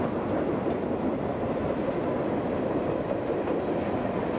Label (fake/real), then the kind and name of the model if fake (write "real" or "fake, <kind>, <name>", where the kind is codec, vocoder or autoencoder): fake, vocoder, BigVGAN v2